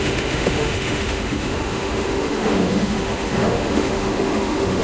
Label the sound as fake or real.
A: fake